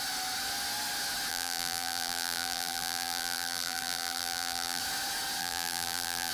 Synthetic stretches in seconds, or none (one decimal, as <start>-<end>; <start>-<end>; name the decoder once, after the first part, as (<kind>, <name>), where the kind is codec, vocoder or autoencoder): 1.3-4.8 (vocoder, BigVGAN v2); 5.4-6.3